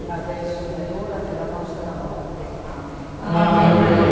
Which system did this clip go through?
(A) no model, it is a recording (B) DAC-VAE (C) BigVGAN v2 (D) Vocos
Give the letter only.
C